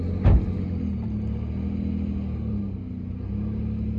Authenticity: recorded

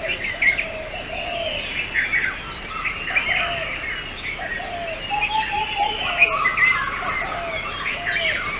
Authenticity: recorded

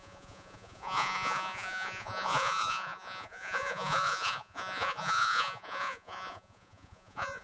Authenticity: remade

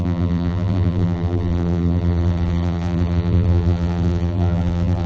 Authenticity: remade